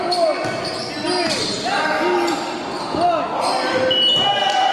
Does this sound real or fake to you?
real